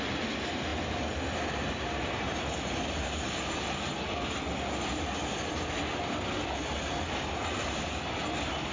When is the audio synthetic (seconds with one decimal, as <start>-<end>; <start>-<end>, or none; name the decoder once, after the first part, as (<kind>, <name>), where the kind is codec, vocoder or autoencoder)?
none